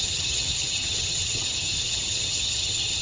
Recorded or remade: remade